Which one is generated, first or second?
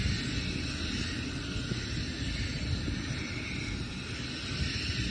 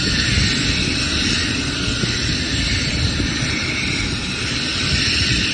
second